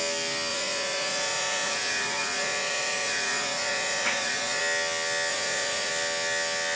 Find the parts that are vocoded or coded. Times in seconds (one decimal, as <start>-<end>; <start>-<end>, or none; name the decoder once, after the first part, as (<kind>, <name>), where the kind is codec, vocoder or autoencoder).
0.5-4.6 (vocoder, Vocos); 5.3-5.9